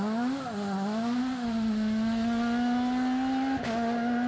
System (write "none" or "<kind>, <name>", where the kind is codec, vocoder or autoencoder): none